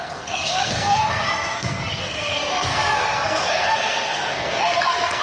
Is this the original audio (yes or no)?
no